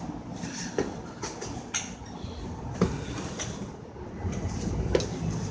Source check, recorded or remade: recorded